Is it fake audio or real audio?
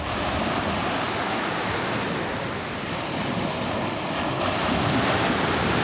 real